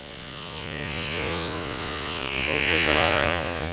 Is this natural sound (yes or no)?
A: no